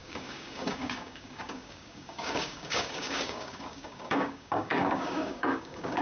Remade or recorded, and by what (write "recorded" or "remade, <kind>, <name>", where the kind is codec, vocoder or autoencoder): remade, codec, DAC